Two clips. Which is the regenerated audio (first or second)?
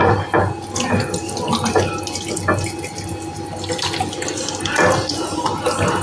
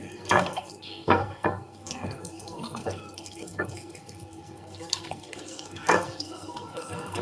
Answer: second